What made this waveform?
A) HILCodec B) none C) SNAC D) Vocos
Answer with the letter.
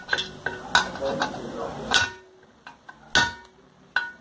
B